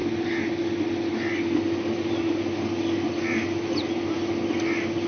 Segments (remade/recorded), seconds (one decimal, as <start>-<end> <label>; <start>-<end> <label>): 0.0-5.1 recorded